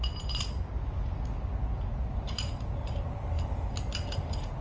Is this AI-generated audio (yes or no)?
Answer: no